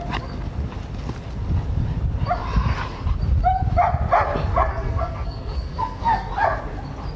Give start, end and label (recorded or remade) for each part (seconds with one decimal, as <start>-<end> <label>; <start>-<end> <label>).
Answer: 0.0-4.7 recorded; 4.7-6.3 remade; 6.3-7.2 recorded

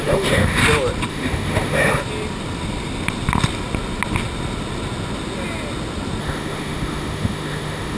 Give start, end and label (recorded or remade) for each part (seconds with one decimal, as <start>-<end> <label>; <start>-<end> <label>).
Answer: 0.0-0.6 remade; 0.6-1.1 recorded; 1.1-2.0 remade; 2.0-6.2 recorded; 6.2-8.0 remade

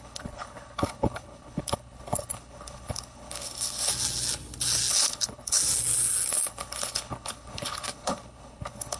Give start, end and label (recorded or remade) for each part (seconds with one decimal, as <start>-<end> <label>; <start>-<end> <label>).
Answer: 0.0-3.9 remade; 3.9-4.9 recorded; 4.9-5.6 remade; 5.6-6.3 recorded; 6.3-9.0 remade

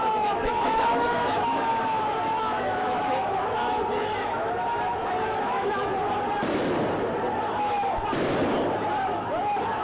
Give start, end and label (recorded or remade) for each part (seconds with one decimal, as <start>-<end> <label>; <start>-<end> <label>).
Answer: 0.0-1.7 remade; 1.7-2.4 recorded; 2.4-5.9 remade; 5.9-9.8 recorded